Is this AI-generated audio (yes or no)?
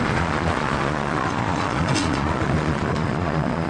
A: yes